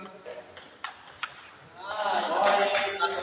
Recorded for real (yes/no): yes